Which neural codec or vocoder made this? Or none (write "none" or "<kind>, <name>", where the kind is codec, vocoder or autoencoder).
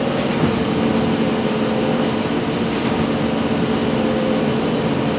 none